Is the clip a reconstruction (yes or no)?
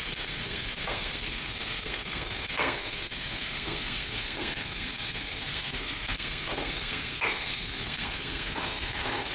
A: yes